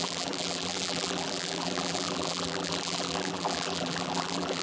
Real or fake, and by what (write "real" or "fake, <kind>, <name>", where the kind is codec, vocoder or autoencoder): fake, vocoder, BigVGAN v2